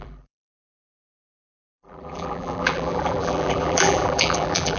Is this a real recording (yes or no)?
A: no